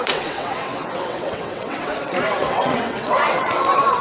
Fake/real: fake